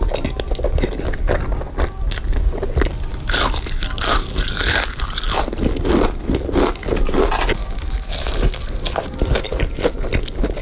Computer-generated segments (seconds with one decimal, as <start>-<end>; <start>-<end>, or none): none